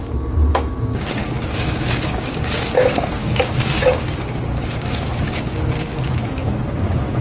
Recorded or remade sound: remade